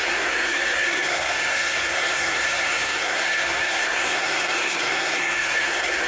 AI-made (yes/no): yes